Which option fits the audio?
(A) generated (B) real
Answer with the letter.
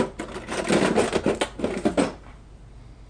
B